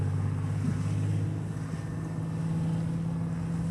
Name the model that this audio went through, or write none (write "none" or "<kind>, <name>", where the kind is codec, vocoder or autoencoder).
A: none